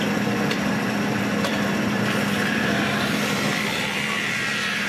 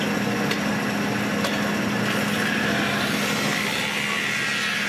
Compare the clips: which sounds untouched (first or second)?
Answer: second